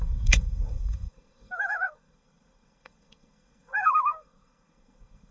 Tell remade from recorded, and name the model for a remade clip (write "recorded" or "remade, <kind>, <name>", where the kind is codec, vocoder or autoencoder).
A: remade, codec, SNAC